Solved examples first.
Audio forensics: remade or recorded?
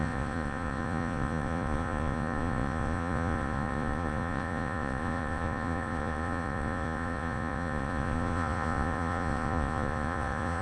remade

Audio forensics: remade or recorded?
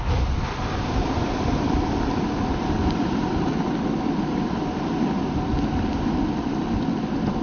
recorded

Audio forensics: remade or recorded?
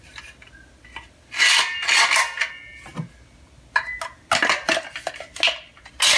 recorded